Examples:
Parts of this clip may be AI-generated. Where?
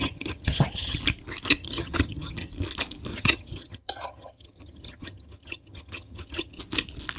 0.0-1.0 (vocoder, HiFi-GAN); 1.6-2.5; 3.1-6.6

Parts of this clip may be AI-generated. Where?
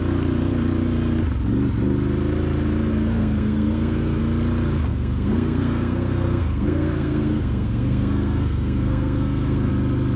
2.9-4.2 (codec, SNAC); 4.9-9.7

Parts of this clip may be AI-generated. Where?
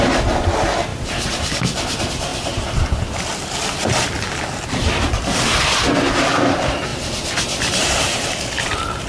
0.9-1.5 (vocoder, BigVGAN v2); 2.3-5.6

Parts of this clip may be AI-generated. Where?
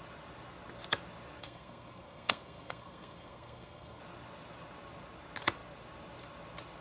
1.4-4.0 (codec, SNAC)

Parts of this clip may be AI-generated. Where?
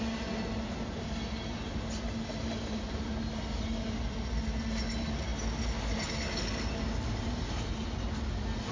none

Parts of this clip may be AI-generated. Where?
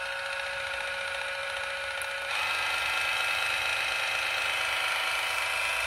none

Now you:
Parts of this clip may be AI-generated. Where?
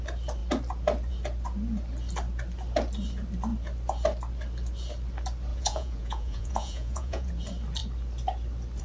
5.5-7.3 (vocoder, Vocos)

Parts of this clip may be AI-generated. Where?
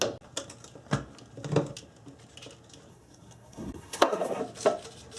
2.9-4.4 (codec, SNAC)